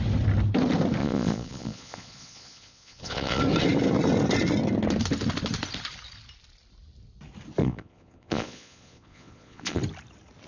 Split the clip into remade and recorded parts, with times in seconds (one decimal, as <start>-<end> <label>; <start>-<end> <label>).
0.0-1.0 recorded; 1.0-3.4 remade; 3.4-7.6 recorded; 7.6-9.8 remade; 9.8-10.5 recorded

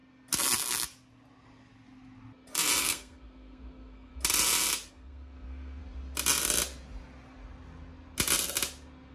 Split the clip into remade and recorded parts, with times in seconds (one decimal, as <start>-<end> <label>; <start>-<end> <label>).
0.0-2.8 recorded; 2.8-4.1 remade; 4.1-4.9 recorded; 4.9-5.8 remade; 5.8-9.1 recorded

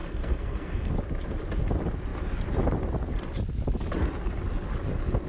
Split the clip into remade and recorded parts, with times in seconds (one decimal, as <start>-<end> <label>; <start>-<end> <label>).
0.0-0.9 remade; 0.9-5.3 recorded

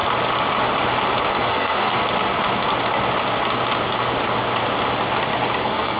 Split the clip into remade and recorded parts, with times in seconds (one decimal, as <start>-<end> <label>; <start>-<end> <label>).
0.0-1.4 recorded; 1.4-2.0 remade; 2.0-5.6 recorded; 5.6-6.0 remade

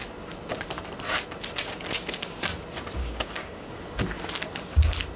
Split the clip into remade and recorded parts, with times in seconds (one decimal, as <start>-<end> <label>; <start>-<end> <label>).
0.0-3.0 recorded; 3.0-3.7 remade; 3.7-5.2 recorded

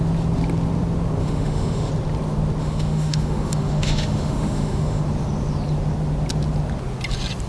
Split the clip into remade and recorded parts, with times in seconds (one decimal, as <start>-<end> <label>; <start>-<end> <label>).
0.0-1.2 recorded; 1.2-1.9 remade; 1.9-2.6 recorded; 2.6-5.0 remade; 5.0-7.5 recorded

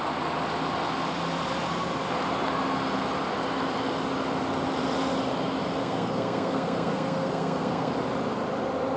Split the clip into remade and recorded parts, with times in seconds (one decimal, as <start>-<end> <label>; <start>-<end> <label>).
0.0-5.8 recorded; 5.8-7.9 remade; 7.9-9.0 recorded

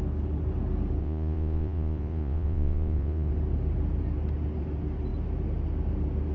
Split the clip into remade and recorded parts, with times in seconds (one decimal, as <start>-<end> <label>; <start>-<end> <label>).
0.0-1.0 recorded; 1.0-3.3 remade; 3.3-6.3 recorded